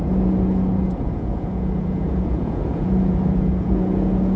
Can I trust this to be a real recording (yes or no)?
no